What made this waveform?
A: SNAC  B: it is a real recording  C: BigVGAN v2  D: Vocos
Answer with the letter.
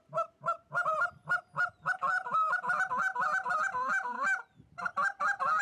B